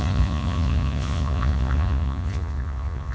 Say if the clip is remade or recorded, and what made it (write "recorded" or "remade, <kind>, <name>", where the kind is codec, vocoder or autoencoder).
remade, vocoder, Vocos